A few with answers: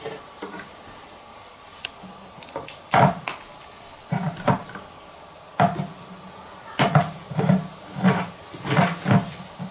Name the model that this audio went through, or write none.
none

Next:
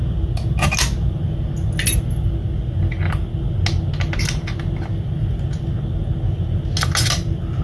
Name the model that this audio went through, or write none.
none